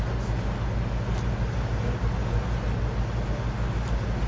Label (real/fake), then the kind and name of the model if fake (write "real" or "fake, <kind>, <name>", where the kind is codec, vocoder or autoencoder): real